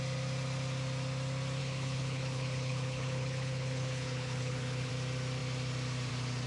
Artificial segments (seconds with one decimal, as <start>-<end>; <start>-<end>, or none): 1.6-4.9